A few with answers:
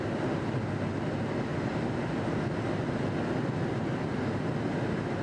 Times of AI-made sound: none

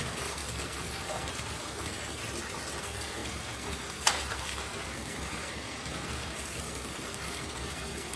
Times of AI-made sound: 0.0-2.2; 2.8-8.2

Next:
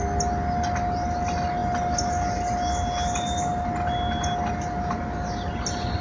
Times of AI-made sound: none

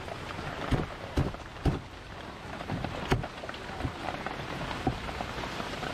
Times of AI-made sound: 0.0-5.9

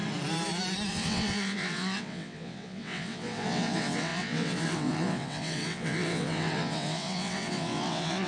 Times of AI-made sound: 0.9-8.3

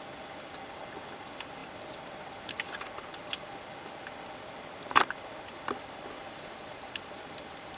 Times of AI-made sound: none